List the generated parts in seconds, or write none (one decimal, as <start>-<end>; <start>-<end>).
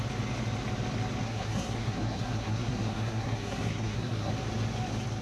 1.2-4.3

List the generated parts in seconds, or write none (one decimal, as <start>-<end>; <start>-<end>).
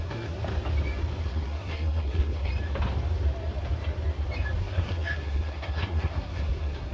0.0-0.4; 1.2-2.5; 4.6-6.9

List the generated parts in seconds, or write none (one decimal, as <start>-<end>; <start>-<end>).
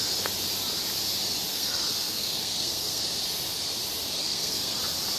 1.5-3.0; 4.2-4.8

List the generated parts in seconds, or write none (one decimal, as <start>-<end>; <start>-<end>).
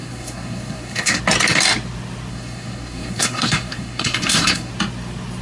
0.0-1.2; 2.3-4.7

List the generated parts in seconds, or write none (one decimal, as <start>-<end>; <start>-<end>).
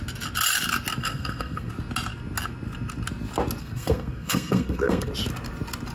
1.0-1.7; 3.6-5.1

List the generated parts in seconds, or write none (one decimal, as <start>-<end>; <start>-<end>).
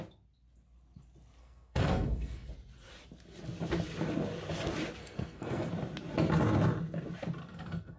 1.4-2.5; 5.0-5.7; 7.4-8.0